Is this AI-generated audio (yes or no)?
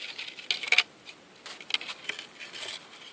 no